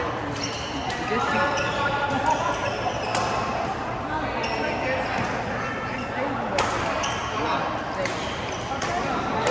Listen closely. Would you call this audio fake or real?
real